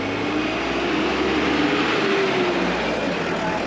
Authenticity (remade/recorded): recorded